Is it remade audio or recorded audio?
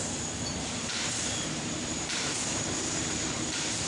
remade